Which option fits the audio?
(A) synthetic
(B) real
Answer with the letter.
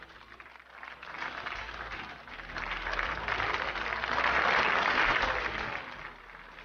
B